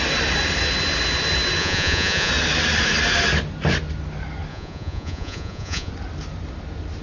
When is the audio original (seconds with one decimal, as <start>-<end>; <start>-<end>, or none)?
0.0-1.6; 2.3-4.5; 5.9-7.0